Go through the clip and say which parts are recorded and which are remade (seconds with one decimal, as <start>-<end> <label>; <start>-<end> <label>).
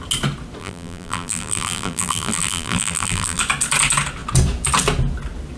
0.0-0.6 recorded; 0.6-3.4 remade; 3.4-5.6 recorded